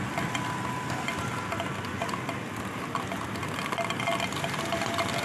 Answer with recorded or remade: recorded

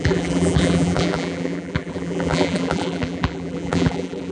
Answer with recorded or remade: remade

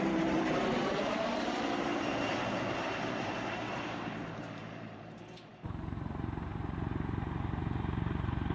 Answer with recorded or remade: remade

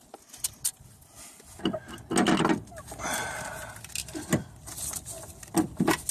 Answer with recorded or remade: recorded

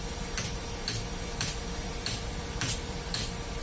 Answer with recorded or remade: remade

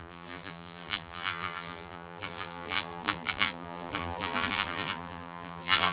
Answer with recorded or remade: remade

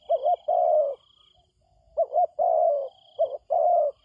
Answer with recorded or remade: recorded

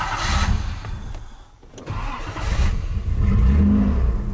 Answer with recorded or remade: recorded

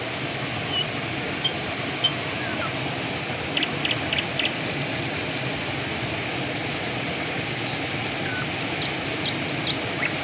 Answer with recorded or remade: recorded